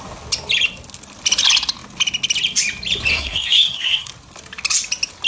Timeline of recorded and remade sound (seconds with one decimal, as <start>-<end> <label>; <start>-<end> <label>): 0.0-3.1 recorded; 3.1-4.1 remade; 4.1-5.3 recorded

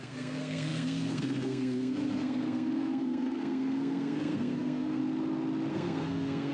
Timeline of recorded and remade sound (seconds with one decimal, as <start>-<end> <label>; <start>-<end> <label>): 0.0-5.0 remade; 5.0-5.7 recorded; 5.7-6.5 remade

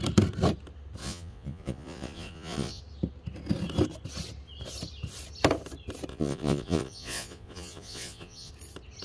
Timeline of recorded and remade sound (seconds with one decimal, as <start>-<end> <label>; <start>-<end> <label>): 0.0-1.0 recorded; 1.0-2.8 remade; 2.8-6.1 recorded; 6.1-8.5 remade; 8.5-9.0 recorded

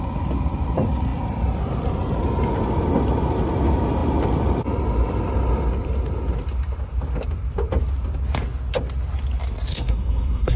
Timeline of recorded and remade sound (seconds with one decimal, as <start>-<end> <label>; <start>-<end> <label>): 0.0-9.7 recorded; 9.7-10.6 remade

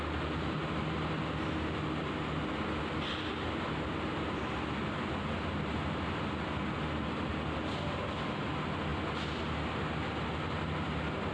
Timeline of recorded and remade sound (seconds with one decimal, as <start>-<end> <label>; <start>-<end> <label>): 0.0-11.3 recorded

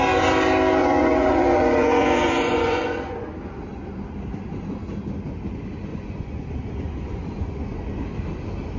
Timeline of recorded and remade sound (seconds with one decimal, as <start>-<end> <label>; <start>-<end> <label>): 0.0-0.8 recorded; 0.8-3.3 remade; 3.3-5.9 recorded; 5.9-8.0 remade; 8.0-8.8 recorded